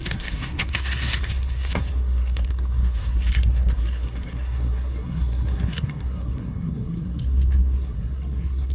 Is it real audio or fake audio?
fake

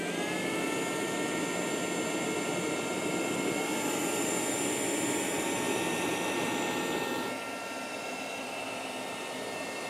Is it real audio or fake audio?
real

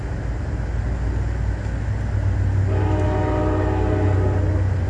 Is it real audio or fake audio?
real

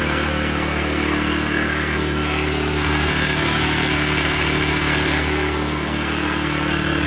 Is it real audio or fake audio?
fake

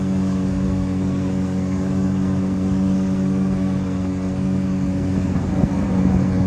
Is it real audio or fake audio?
fake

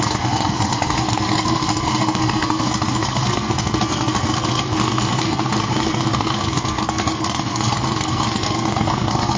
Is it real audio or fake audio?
fake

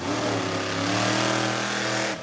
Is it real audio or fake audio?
real